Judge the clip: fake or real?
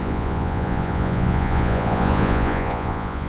fake